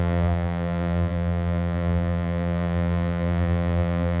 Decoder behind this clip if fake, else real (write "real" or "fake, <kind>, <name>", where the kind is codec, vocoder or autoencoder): fake, vocoder, BigVGAN v2